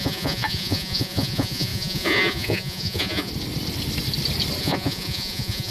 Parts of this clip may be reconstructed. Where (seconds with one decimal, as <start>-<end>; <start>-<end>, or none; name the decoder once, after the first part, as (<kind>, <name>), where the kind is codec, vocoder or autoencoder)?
0.0-3.3 (vocoder, Vocos); 4.6-5.7